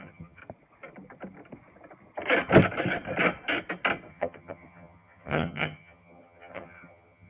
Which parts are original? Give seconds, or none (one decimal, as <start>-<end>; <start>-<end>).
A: 0.4-4.1